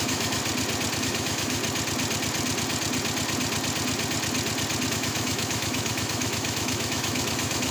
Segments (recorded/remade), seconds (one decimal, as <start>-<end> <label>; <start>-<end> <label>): 0.0-0.4 remade; 0.4-1.0 recorded; 1.0-1.6 remade; 1.6-4.9 recorded; 4.9-7.7 remade